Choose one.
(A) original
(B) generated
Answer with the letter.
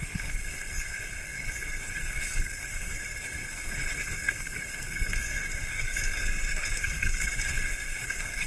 B